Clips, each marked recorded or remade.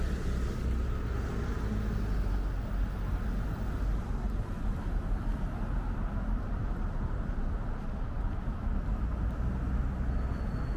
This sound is recorded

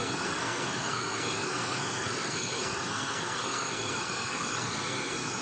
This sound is remade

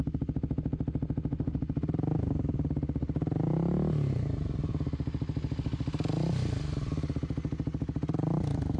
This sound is recorded